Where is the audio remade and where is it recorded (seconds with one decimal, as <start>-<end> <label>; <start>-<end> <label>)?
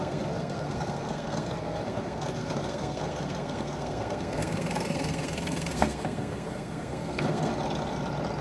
0.0-7.5 remade; 7.5-8.4 recorded